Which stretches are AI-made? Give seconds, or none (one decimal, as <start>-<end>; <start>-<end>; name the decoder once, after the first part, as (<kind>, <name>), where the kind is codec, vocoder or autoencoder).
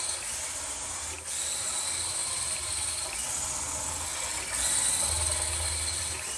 none